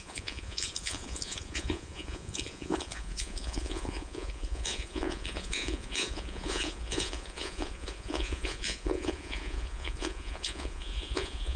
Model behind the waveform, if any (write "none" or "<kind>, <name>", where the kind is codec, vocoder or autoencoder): vocoder, Vocos